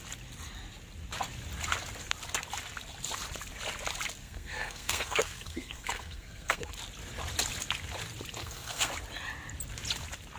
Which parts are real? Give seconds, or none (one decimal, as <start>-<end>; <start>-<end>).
0.0-4.2; 6.7-8.4; 8.9-10.4